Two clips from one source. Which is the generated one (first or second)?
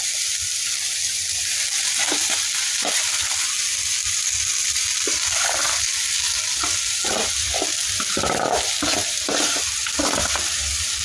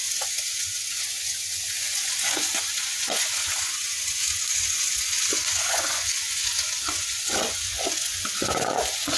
second